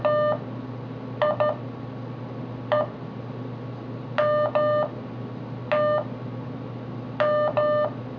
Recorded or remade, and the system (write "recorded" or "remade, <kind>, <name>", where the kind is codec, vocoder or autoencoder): recorded